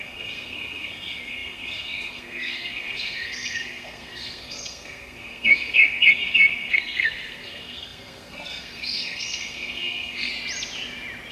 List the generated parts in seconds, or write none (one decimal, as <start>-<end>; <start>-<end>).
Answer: 0.0-10.3